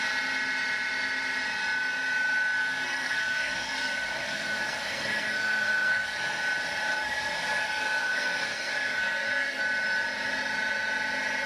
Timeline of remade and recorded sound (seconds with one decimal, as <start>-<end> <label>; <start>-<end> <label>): 0.0-2.6 recorded; 2.6-6.4 remade; 6.4-6.9 recorded; 6.9-9.6 remade; 9.6-11.5 recorded